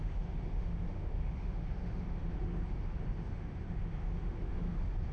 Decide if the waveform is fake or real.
fake